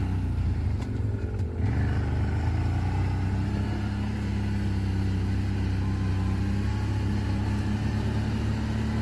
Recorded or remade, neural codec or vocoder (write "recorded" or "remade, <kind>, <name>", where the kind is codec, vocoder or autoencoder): recorded